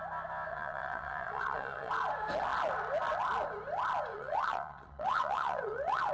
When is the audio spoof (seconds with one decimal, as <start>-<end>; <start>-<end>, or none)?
0.5-1.9; 4.1-6.1